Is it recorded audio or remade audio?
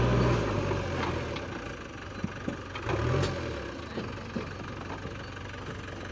recorded